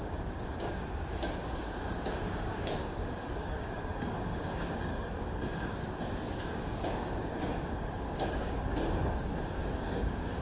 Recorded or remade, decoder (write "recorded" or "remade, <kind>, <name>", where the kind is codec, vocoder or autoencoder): remade, codec, DAC